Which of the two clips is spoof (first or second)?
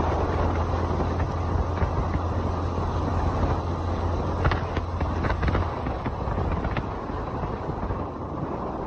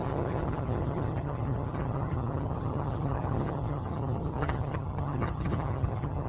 second